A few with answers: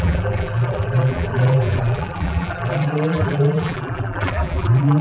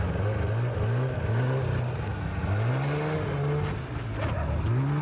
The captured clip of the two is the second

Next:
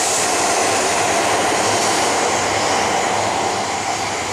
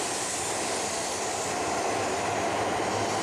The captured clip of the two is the second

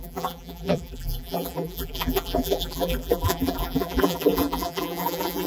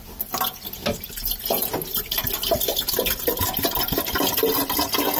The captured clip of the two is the second